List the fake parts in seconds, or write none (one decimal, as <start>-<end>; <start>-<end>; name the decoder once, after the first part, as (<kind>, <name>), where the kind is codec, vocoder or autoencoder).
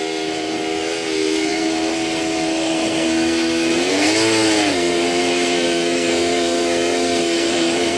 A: 0.0-8.0 (codec, SNAC)